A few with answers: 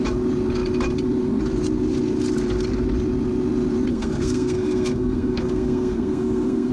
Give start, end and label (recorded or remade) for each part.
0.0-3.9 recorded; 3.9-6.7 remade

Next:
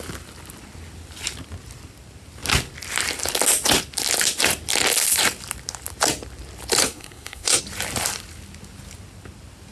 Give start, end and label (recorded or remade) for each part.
0.0-6.8 recorded; 6.8-7.6 remade; 7.6-9.7 recorded